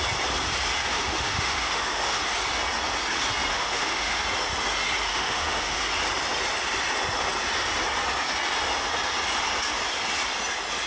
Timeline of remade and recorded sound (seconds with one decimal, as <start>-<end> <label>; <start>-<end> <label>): 0.0-0.8 recorded; 0.8-2.2 remade; 2.2-3.5 recorded; 3.5-4.2 remade; 4.2-5.1 recorded; 5.1-5.8 remade; 5.8-10.9 recorded